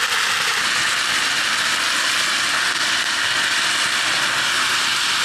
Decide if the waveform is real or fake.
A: real